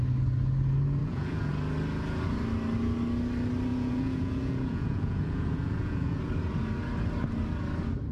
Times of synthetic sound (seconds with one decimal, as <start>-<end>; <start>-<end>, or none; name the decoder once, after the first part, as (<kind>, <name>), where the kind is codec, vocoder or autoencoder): 1.0-1.5 (vocoder, Vocos); 3.7-6.2